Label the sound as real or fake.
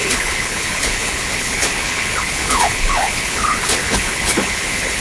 fake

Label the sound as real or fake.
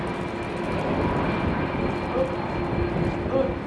real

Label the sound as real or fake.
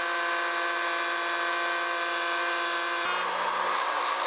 real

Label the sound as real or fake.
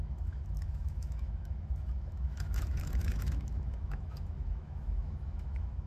fake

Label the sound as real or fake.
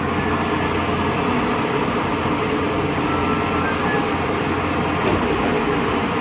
real